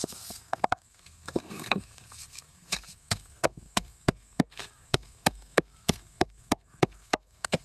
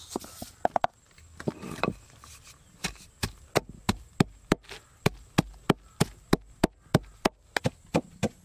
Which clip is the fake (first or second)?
first